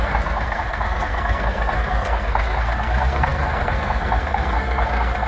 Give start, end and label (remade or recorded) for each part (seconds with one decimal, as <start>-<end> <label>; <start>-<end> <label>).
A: 0.0-5.3 remade